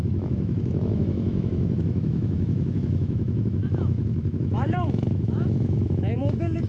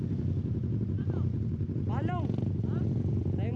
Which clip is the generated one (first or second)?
first